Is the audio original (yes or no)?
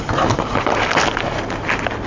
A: yes